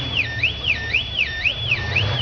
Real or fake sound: fake